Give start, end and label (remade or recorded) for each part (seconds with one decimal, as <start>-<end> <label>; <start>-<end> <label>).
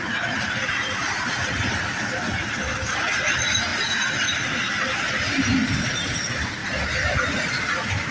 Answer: 0.0-8.1 recorded